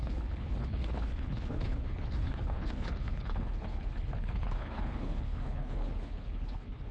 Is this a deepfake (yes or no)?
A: yes